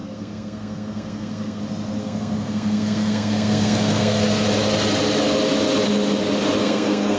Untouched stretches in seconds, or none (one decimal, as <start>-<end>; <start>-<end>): 1.6-2.0; 4.2-6.6